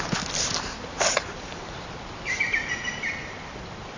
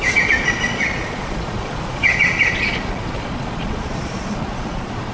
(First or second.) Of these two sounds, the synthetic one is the second